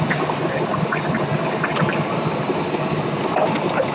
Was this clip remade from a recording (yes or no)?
no